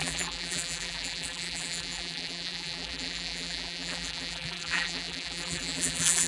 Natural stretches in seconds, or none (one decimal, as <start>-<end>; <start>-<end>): none